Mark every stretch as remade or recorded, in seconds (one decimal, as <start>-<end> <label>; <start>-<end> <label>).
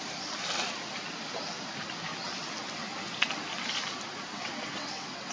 0.0-4.3 recorded; 4.3-5.3 remade